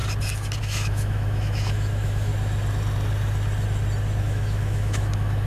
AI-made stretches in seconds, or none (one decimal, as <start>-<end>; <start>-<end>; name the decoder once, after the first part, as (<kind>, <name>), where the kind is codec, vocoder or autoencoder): 0.6-2.3 (autoencoder, DAC-VAE); 4.2-5.5